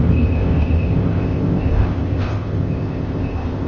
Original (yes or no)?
no